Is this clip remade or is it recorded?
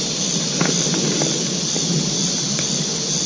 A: recorded